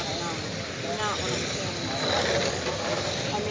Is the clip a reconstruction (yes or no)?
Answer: no